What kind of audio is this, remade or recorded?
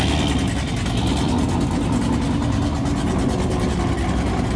recorded